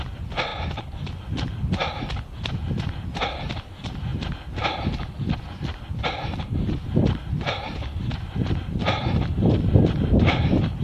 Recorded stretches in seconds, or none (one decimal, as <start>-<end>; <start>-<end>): 0.0-0.5; 1.1-6.8